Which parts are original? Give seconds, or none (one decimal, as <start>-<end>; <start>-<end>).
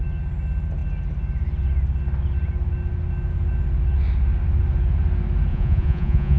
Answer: 0.0-5.5